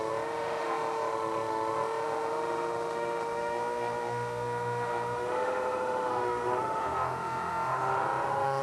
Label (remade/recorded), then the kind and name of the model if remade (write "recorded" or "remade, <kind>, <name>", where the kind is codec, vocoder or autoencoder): remade, autoencoder, DAC-VAE